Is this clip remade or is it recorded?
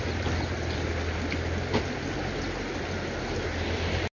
recorded